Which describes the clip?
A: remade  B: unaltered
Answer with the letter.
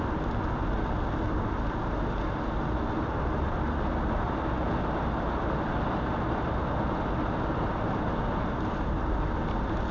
B